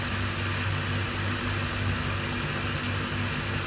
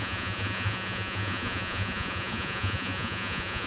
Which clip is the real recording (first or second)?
first